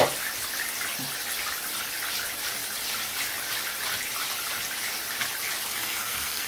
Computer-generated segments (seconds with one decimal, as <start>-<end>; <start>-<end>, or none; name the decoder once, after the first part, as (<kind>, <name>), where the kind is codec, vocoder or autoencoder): 5.7-6.5 (codec, SNAC)